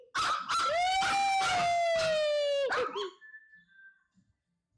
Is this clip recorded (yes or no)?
yes